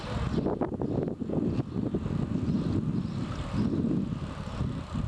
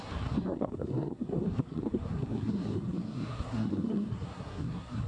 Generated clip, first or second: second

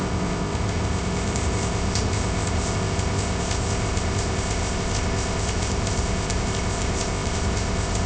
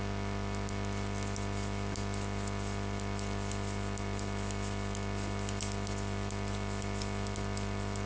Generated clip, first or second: first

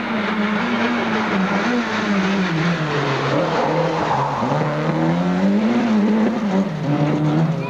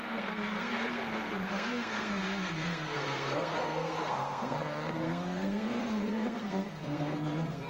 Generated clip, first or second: second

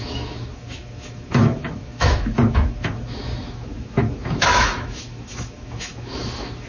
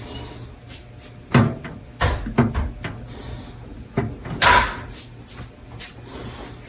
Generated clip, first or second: first